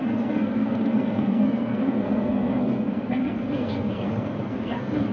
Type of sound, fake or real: fake